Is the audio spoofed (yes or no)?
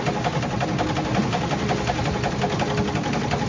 no